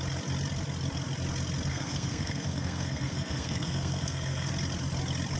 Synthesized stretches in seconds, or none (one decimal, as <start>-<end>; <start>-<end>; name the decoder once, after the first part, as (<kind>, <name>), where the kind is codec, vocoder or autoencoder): 1.7-4.5 (codec, SNAC)

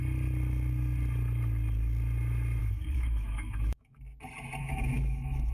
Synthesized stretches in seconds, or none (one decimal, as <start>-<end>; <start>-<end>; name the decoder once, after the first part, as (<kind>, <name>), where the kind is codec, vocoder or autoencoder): 2.6-4.0 (autoencoder, DAC-VAE); 4.6-5.5

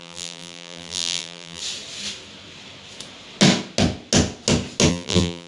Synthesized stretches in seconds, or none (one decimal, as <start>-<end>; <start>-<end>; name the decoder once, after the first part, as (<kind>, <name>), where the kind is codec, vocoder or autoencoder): 0.0-1.6 (vocoder, BigVGAN v2); 4.9-5.5